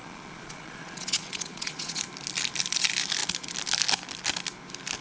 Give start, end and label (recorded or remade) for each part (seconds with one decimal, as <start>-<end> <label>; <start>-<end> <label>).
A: 0.0-2.0 remade; 2.0-5.0 recorded